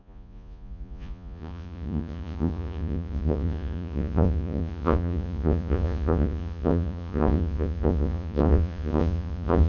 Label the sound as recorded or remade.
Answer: remade